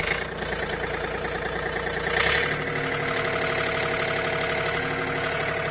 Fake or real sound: real